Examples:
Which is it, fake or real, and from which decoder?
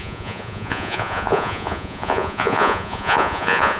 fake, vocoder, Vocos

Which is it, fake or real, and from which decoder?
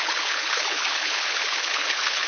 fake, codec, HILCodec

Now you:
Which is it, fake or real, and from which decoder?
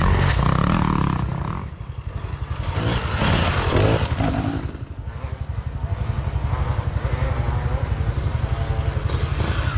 real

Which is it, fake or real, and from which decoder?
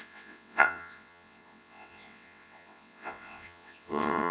fake, vocoder, WaveNeXt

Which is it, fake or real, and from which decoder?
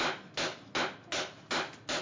real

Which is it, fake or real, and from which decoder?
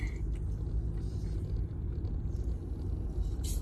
real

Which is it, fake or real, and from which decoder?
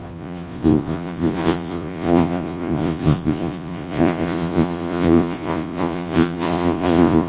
fake, vocoder, Vocos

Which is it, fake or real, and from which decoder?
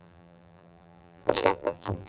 fake, vocoder, BigVGAN v2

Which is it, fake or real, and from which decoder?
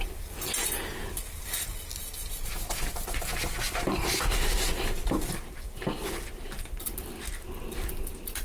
real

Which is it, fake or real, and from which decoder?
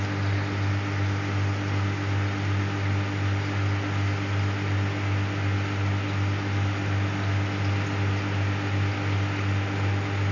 real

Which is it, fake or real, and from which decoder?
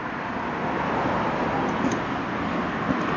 real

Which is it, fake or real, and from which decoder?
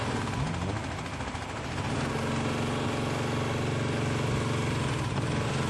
real